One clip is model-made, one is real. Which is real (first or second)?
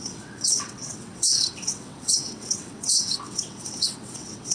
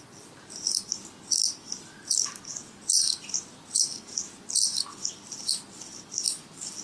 second